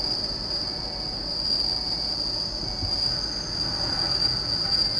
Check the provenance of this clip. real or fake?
real